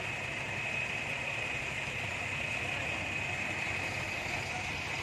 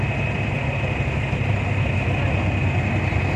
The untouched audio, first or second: second